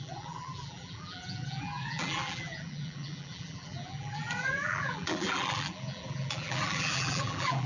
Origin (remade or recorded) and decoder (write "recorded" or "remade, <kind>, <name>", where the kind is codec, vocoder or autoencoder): remade, vocoder, BigVGAN v2